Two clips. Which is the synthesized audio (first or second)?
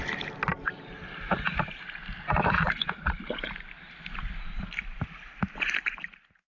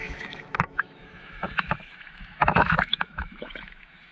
second